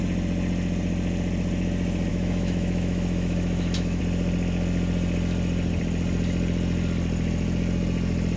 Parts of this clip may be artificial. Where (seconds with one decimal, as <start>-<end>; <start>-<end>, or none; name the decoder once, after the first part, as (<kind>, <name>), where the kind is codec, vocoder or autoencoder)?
2.1-4.0 (autoencoder, DAC-VAE)